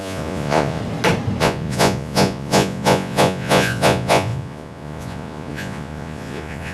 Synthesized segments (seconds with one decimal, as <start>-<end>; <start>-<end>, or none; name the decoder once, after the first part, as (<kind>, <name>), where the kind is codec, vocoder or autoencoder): 0.0-0.8 (vocoder, Vocos); 1.4-6.7